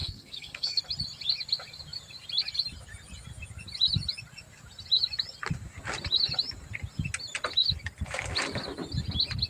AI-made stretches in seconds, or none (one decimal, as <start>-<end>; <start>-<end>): 0.0-0.8